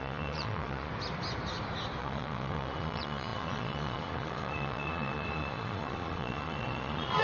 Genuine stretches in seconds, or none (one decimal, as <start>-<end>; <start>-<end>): 0.9-2.0